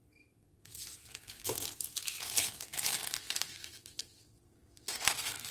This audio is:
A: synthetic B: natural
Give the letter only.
A